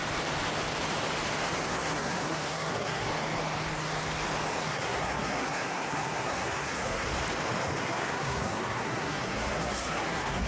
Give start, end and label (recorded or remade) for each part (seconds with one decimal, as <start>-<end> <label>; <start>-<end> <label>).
0.0-1.7 recorded; 1.7-3.1 remade; 3.1-4.6 recorded; 4.6-7.1 remade; 7.1-7.8 recorded; 7.8-10.5 remade

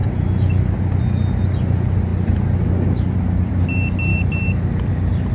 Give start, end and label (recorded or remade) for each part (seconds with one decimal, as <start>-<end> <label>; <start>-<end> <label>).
0.0-5.3 recorded